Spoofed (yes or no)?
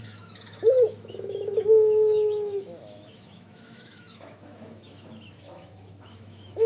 yes